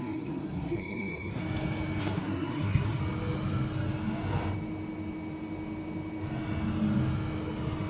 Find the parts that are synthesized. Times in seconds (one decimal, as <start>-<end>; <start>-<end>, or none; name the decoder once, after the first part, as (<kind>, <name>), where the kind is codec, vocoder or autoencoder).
0.0-1.4 (codec, SNAC); 2.0-3.0